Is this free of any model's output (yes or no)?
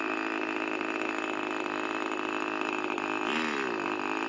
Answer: yes